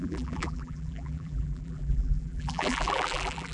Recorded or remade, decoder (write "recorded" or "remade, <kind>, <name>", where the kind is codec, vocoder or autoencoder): remade, vocoder, BigVGAN v2